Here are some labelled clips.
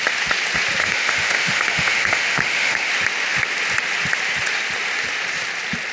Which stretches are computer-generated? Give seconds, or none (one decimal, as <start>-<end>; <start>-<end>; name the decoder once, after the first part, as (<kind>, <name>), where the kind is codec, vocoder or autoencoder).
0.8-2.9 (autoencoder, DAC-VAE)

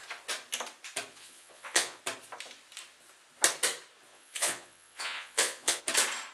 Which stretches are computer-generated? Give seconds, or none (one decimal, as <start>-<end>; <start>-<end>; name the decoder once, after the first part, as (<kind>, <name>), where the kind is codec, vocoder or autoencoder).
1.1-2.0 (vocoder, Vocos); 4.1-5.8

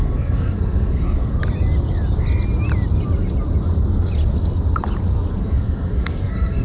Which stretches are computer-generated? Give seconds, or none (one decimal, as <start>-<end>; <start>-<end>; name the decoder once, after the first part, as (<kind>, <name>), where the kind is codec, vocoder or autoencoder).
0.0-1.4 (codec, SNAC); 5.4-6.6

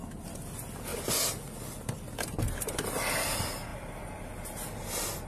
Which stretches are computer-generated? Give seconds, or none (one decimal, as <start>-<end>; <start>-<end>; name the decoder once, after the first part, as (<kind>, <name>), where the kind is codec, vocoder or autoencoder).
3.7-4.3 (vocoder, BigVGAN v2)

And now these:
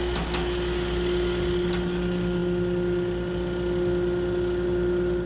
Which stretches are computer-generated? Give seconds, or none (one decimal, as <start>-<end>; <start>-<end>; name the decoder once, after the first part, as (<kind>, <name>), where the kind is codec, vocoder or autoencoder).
none